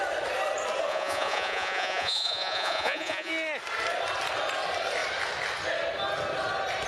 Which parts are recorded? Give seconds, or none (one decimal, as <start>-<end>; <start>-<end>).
0.0-0.9; 3.3-6.9